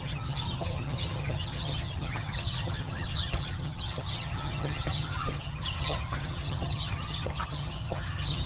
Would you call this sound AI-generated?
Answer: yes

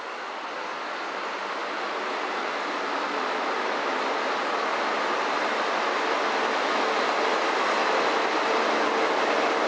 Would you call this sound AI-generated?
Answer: no